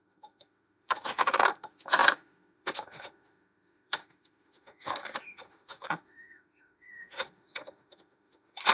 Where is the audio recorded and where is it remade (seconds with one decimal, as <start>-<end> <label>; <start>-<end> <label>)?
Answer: 0.0-8.7 remade